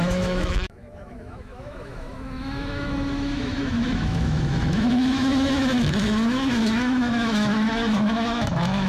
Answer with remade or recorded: remade